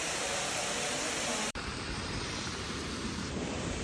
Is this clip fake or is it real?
fake